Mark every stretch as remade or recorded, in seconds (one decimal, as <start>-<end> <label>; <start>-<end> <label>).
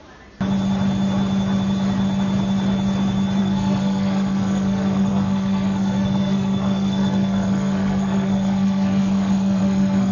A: 0.0-3.4 recorded; 3.4-10.1 remade